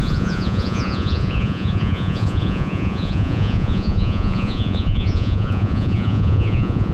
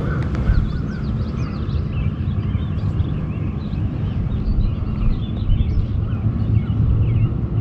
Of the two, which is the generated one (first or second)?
first